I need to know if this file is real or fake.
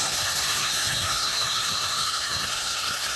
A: fake